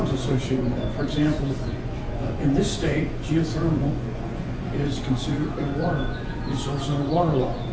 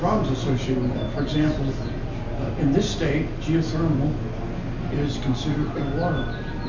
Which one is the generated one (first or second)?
first